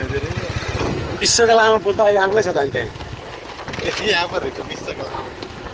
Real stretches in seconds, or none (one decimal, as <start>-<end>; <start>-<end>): 0.0-0.9; 3.3-5.1